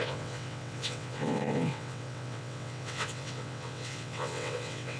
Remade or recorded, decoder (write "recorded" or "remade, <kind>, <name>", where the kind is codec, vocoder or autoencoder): remade, vocoder, WaveNeXt